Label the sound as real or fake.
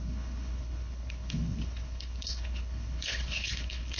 fake